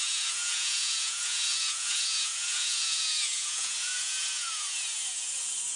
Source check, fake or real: fake